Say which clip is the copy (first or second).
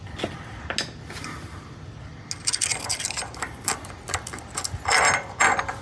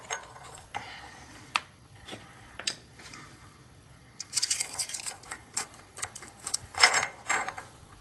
second